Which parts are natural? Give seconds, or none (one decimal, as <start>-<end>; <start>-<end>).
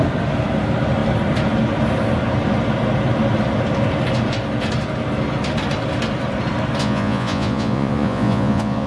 0.0-6.8